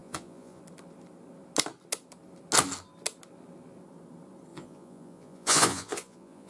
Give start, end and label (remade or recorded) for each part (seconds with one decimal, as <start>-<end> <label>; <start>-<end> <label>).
0.0-0.6 remade; 0.6-4.5 recorded; 4.5-6.5 remade